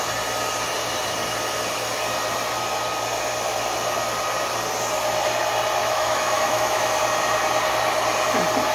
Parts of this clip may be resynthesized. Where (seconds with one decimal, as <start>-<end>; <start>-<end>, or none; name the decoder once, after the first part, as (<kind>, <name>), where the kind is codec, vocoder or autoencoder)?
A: 5.8-7.0 (autoencoder, DAC-VAE)